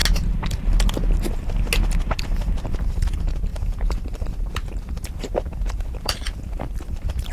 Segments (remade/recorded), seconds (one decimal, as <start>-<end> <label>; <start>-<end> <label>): 0.0-2.2 recorded; 2.2-7.3 remade